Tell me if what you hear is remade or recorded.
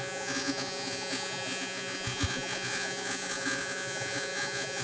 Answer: remade